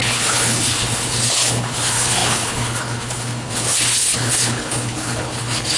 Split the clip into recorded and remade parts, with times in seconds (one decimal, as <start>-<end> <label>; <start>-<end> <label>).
0.0-5.8 remade